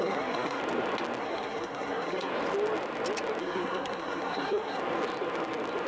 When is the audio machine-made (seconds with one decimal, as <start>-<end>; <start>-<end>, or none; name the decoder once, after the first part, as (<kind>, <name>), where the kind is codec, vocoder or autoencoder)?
0.0-0.6 (codec, SNAC); 1.2-2.3; 3.4-4.8